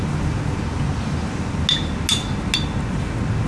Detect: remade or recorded recorded